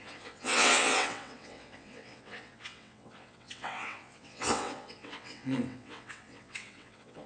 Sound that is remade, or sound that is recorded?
remade